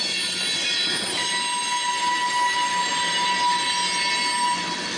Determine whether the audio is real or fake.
real